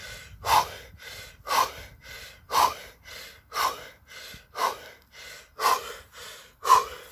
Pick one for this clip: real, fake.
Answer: real